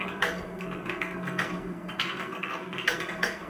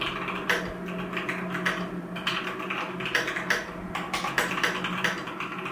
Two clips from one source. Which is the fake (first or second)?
first